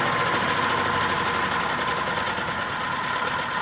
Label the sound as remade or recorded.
recorded